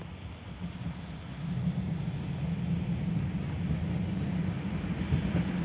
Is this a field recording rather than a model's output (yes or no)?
yes